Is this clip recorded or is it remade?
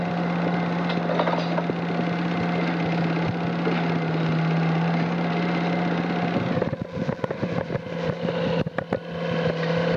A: recorded